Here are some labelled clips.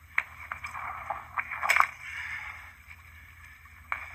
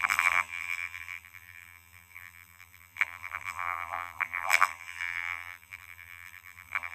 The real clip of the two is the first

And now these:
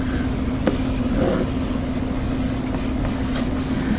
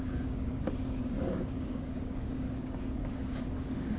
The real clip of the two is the first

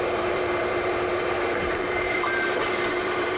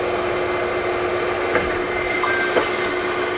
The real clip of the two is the second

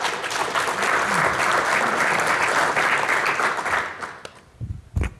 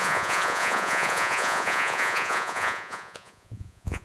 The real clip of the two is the first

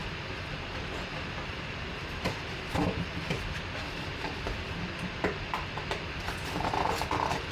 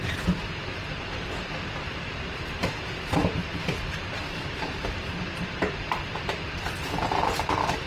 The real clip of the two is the first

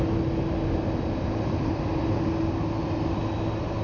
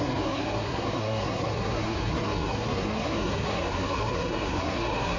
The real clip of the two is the first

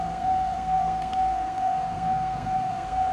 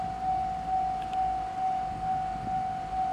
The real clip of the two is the second